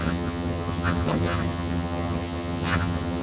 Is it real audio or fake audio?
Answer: fake